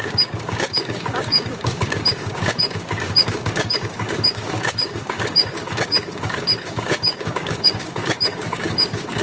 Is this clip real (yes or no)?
no